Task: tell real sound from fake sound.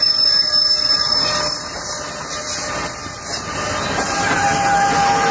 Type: real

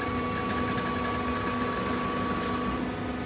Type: real